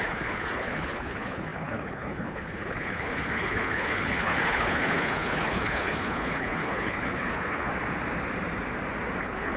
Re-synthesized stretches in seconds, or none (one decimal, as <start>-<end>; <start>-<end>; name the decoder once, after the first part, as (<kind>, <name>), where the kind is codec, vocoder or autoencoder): 0.0-7.7 (codec, HILCodec); 9.2-9.6